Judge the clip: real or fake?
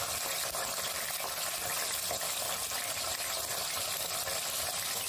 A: fake